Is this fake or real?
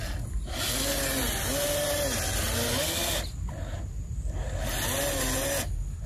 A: real